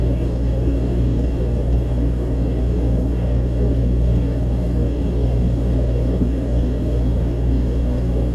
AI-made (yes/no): yes